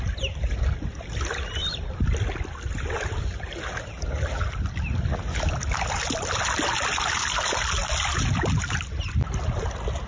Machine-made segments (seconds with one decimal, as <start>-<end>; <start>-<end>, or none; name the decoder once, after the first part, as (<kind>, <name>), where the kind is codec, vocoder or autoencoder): 1.6-3.3 (vocoder, BigVGAN v2)